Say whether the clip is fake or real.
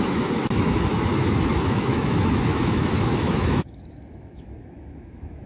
fake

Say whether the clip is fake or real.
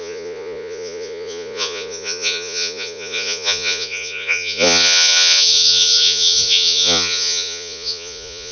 fake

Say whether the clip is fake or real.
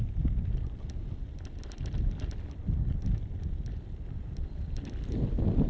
real